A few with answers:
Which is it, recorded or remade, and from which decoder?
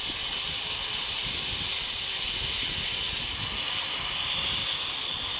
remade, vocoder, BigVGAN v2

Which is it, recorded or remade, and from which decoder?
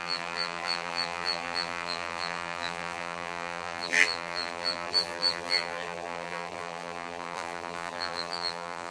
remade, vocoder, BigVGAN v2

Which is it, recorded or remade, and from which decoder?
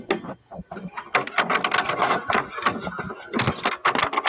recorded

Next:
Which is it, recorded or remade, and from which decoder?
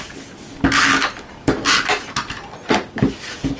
recorded